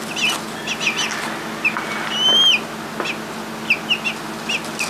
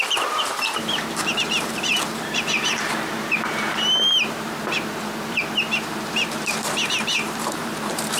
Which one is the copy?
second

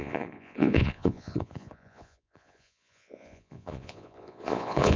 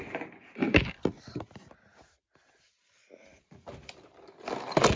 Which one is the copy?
first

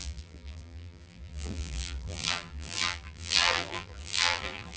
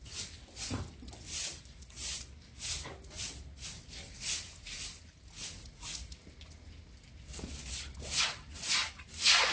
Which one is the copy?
first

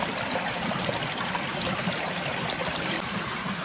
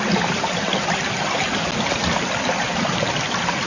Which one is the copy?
first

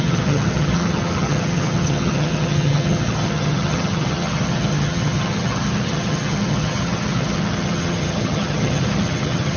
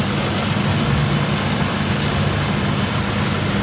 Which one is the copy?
first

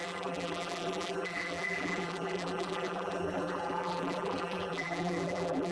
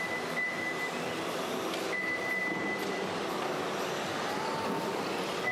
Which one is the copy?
first